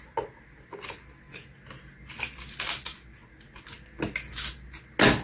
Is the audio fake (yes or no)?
no